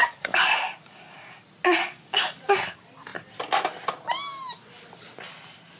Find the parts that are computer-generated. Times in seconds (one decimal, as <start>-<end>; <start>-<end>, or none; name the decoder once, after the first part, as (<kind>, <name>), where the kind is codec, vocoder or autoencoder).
0.0-1.4 (codec, DAC); 1.8-2.5